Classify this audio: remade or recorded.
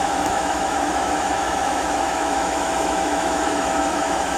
remade